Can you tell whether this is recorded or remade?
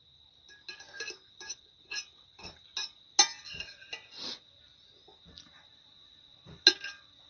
recorded